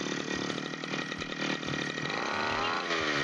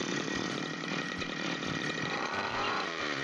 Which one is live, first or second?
first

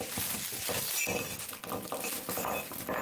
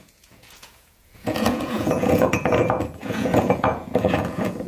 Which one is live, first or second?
first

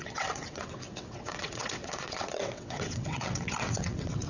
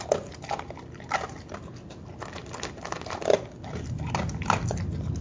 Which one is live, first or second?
second